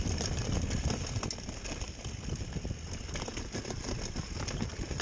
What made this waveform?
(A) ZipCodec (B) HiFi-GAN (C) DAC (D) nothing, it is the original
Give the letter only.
D